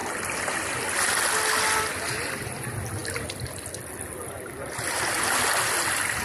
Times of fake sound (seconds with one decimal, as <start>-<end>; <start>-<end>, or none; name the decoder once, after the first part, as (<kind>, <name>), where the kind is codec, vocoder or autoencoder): none